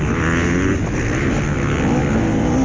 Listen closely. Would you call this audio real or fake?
real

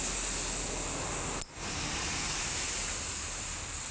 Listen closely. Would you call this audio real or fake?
real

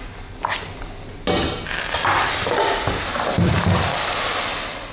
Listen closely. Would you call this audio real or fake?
real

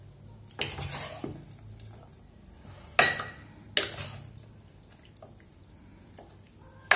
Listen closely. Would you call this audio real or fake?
real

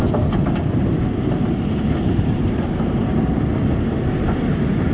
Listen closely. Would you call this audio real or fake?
real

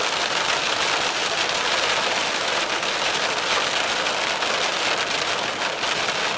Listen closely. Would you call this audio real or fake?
real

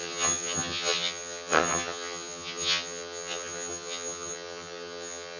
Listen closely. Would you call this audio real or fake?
fake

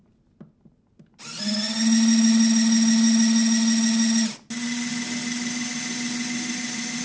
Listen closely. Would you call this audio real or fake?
real